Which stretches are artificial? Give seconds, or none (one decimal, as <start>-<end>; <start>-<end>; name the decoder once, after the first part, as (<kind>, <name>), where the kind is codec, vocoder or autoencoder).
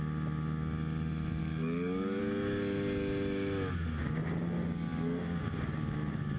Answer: 1.4-2.2 (codec, DAC)